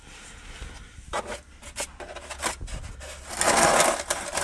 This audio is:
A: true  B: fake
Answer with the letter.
A